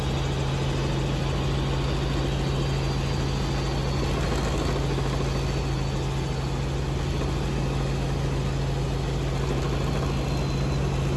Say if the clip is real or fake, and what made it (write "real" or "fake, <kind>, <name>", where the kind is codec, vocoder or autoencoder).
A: real